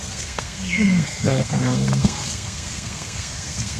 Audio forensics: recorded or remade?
remade